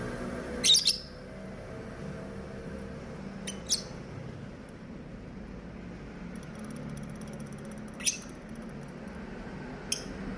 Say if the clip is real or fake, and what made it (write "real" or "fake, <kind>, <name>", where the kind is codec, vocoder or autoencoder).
real